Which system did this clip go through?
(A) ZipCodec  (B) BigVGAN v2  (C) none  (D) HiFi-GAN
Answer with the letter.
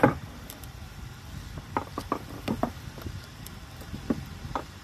B